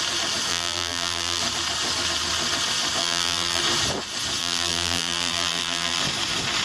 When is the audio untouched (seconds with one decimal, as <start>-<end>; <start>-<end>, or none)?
0.0-0.5; 1.4-3.0; 3.6-4.4; 6.0-6.6